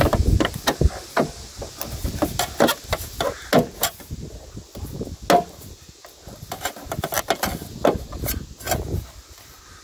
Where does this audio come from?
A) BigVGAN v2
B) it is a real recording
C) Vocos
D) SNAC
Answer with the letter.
B